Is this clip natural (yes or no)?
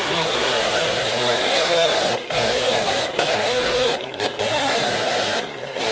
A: no